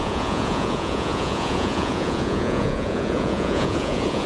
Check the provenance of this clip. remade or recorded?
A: remade